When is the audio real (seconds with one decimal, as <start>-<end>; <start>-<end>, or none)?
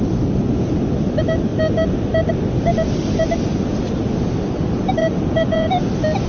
0.0-5.0; 5.8-6.3